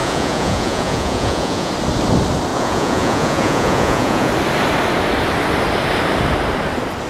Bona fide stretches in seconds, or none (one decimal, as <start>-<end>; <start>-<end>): 1.7-2.5; 4.3-7.1